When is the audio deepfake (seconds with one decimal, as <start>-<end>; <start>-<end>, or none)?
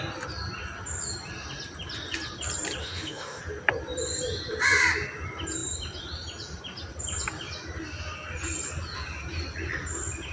2.8-3.4